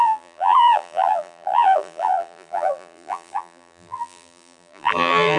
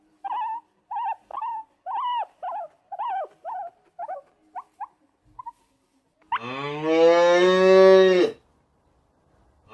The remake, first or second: first